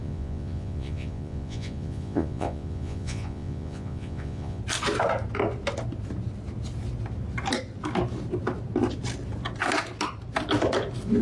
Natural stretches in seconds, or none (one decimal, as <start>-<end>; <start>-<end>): 4.6-11.2